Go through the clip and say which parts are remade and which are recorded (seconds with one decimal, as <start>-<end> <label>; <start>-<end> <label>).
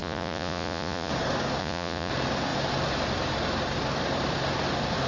0.0-1.1 remade; 1.1-1.6 recorded; 1.6-2.1 remade; 2.1-5.1 recorded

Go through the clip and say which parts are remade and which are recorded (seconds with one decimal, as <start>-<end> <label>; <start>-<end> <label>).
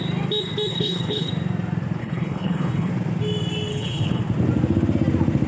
0.0-0.7 recorded; 0.7-1.3 remade; 1.3-2.0 recorded; 2.0-2.9 remade; 2.9-3.7 recorded; 3.7-4.2 remade; 4.2-5.5 recorded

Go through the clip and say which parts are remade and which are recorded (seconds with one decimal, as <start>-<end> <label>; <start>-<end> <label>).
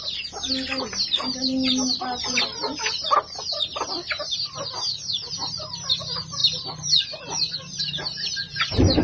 0.0-9.0 recorded